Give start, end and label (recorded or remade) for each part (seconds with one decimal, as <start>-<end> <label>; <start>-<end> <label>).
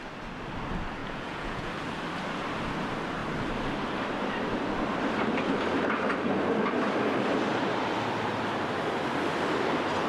0.0-1.0 recorded; 1.0-1.7 remade; 1.7-10.1 recorded